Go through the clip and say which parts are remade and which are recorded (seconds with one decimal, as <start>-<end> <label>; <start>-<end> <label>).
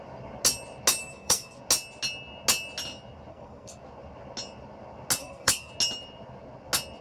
0.0-1.0 recorded; 1.0-1.6 remade; 1.6-3.3 recorded; 3.3-3.8 remade; 3.8-5.2 recorded; 5.2-5.7 remade; 5.7-7.0 recorded